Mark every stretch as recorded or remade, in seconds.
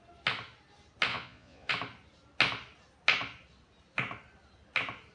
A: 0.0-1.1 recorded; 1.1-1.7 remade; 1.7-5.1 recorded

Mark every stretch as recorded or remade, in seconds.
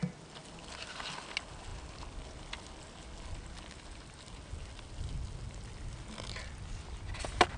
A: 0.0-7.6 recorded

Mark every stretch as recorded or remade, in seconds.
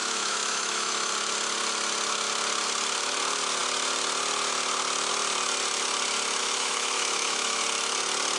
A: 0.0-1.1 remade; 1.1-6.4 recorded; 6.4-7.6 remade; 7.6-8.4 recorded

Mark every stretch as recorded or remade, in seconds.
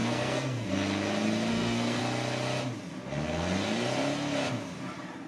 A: 0.0-0.7 remade; 0.7-1.5 recorded; 1.5-2.0 remade; 2.0-5.3 recorded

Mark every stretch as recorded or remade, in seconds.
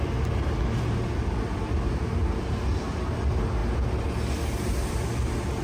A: 0.0-5.6 recorded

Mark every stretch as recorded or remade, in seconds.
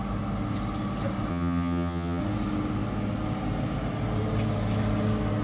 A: 0.0-1.3 recorded; 1.3-2.2 remade; 2.2-5.4 recorded